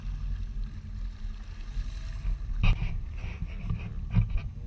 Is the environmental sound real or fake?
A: real